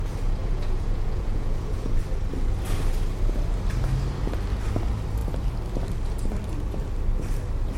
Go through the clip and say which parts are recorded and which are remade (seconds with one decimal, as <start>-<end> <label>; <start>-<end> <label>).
0.0-0.4 recorded; 0.4-1.9 remade; 1.9-7.8 recorded